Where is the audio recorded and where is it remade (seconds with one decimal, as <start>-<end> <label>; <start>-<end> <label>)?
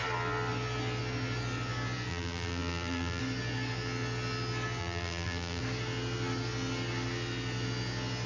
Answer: 0.0-2.1 recorded; 2.1-3.2 remade; 3.2-4.8 recorded; 4.8-5.6 remade; 5.6-8.3 recorded